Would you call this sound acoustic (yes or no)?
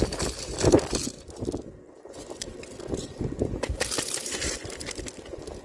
yes